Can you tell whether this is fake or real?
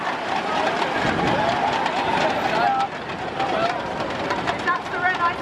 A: real